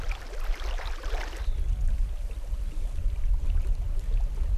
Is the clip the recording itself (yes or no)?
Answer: yes